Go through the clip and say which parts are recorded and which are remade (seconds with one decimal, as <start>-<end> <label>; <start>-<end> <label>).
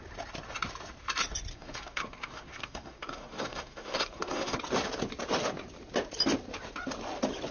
0.0-1.5 recorded; 1.5-4.6 remade; 4.6-7.5 recorded